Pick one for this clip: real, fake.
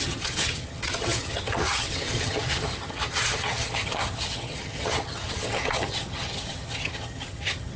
fake